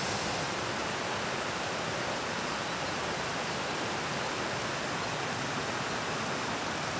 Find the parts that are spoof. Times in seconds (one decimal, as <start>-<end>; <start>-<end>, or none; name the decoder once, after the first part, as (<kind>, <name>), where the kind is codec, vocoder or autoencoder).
0.8-3.7 (vocoder, BigVGAN v2)